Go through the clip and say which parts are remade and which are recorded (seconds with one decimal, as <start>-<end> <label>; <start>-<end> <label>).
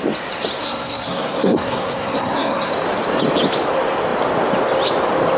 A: 0.0-0.6 recorded; 0.6-2.7 remade; 2.7-5.4 recorded